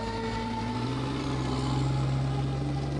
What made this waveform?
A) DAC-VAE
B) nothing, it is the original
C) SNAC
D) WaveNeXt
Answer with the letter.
B